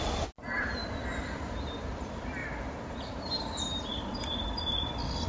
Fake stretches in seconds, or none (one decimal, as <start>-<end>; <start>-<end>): 0.8-1.6; 2.4-4.6

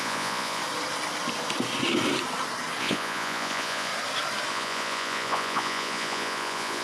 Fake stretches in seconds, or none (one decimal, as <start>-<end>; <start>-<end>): 0.0-0.6; 2.8-3.9; 4.5-6.8